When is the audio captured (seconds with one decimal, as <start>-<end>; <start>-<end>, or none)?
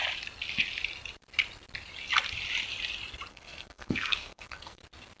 0.0-3.3; 4.8-5.2